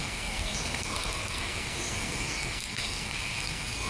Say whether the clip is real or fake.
fake